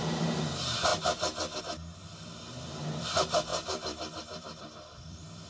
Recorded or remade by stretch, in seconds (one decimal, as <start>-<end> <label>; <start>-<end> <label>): 0.0-0.9 recorded; 0.9-1.6 remade; 1.6-3.5 recorded; 3.5-5.5 remade